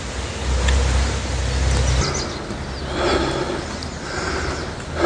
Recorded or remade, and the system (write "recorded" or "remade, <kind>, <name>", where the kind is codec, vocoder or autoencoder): recorded